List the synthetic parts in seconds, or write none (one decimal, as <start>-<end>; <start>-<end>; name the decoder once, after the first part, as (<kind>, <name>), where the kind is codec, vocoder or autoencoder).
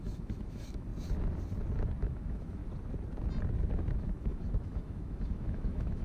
0.0-0.9 (autoencoder, DAC-VAE); 2.0-2.6; 3.9-6.0